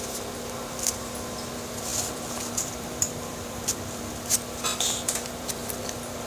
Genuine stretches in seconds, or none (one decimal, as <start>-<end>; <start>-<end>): 0.0-1.9; 4.1-4.7; 5.7-6.3